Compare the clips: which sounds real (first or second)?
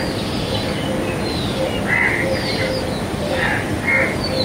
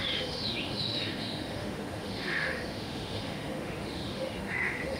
first